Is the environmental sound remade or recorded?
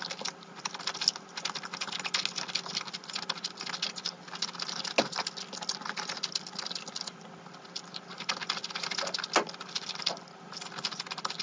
recorded